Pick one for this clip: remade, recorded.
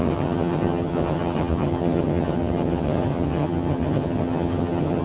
remade